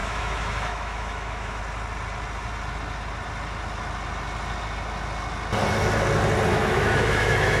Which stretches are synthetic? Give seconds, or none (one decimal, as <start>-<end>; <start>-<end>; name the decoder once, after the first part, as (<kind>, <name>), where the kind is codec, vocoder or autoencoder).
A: 0.0-1.6 (autoencoder, DAC-VAE); 6.5-7.6